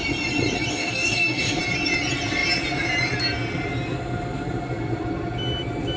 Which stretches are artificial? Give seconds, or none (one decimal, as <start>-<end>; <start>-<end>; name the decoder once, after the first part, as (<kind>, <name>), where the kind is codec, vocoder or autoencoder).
0.7-1.6 (codec, DAC)

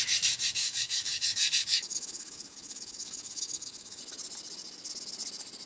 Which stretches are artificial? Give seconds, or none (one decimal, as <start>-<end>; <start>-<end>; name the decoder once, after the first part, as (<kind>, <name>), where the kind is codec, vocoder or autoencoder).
0.6-4.0 (codec, DAC)

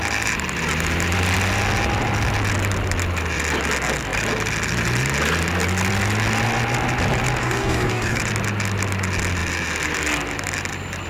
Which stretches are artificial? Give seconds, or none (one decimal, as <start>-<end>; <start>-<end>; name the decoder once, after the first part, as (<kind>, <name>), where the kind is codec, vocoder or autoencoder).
7.4-8.2 (codec, DAC)

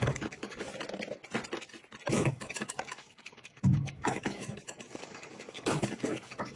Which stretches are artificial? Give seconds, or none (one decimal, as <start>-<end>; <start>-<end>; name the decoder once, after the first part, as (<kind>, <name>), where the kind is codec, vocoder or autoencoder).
0.0-0.7 (codec, DAC); 2.1-6.6

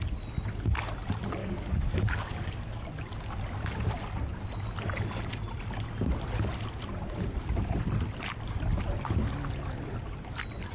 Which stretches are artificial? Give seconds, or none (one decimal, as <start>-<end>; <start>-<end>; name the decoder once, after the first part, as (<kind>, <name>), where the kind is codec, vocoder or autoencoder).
1.4-2.8 (codec, DAC)

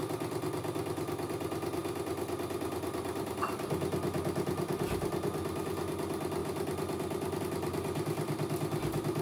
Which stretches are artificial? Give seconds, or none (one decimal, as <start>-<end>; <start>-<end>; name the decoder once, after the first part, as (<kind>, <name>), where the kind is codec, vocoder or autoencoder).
none

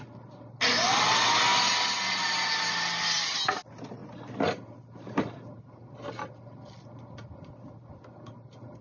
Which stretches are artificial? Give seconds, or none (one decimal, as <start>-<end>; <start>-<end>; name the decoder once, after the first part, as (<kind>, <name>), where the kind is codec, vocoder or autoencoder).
none